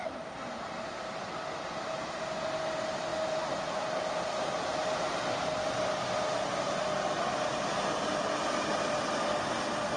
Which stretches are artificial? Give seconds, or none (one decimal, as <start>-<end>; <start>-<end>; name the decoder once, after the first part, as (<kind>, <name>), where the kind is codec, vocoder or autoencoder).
none